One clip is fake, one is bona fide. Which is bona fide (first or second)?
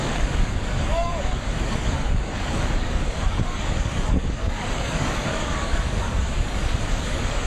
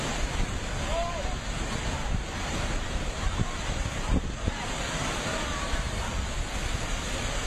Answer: second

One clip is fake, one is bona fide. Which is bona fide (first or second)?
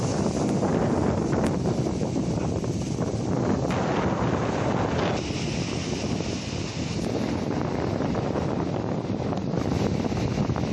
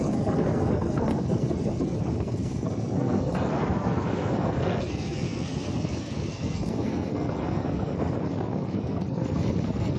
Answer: first